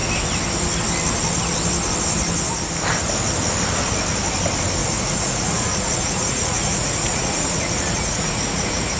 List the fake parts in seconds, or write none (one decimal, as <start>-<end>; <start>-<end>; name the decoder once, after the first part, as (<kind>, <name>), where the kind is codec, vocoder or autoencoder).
4.8-9.0 (vocoder, Vocos)

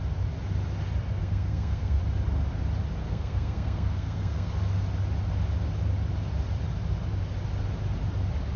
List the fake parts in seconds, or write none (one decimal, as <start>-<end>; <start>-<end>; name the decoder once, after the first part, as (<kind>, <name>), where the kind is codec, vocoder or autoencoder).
1.2-2.0 (codec, SNAC); 3.0-4.5

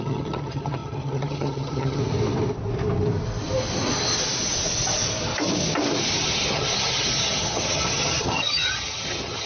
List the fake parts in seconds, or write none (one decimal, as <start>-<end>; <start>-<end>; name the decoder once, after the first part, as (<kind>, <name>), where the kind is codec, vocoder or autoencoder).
0.0-2.0 (vocoder, HiFi-GAN); 6.2-9.5

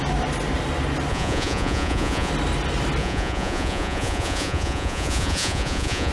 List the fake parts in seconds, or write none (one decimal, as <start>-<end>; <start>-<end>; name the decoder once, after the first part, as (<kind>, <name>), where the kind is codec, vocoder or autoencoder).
1.1-2.3 (vocoder, Vocos); 3.0-6.1

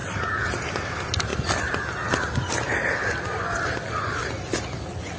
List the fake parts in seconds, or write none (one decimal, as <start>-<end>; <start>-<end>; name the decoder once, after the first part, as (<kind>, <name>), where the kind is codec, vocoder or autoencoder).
none

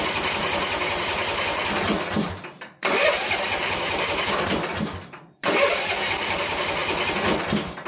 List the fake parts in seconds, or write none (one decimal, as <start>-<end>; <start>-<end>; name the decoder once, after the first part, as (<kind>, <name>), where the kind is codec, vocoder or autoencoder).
none

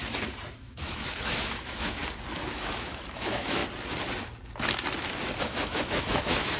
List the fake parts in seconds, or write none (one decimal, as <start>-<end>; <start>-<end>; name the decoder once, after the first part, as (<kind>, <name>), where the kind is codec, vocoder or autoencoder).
0.6-2.0 (autoencoder, DAC-VAE); 2.5-3.6; 5.4-6.6